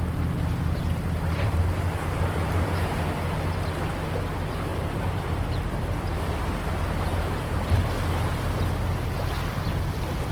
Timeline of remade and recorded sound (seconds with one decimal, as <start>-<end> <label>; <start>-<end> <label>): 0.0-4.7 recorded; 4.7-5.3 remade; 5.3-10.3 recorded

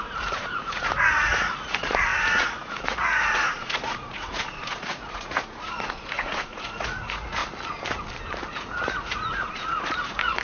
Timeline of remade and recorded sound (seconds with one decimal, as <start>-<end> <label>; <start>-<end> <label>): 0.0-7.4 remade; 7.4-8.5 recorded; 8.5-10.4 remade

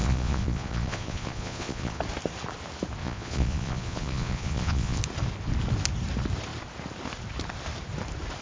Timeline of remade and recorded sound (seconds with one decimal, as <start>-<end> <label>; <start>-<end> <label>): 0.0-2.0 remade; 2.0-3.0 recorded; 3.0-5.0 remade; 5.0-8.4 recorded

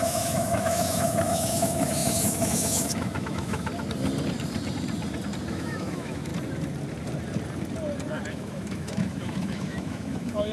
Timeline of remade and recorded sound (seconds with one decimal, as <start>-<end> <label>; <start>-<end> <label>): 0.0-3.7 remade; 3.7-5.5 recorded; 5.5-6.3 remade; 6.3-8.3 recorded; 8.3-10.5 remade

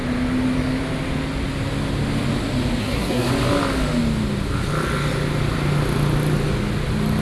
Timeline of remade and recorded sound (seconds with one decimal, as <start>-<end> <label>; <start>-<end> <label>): 0.0-2.8 recorded; 2.8-3.3 remade; 3.3-7.2 recorded

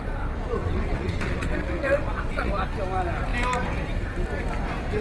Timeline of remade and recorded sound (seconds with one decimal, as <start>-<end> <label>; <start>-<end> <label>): 0.0-0.6 recorded; 0.6-2.5 remade; 2.5-5.0 recorded